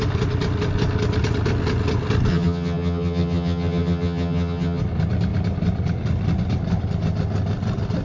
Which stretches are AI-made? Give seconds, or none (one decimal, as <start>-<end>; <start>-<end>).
2.3-4.8